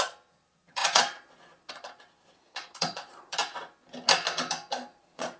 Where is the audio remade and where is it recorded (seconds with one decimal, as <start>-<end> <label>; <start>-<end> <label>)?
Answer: 0.0-3.4 remade; 3.4-5.0 recorded; 5.0-5.4 remade